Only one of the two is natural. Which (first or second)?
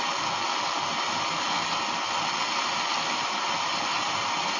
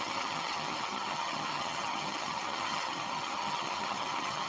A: first